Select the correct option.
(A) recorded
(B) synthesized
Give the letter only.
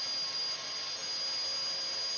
A